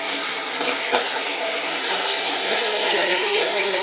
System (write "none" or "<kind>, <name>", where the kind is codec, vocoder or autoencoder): codec, SNAC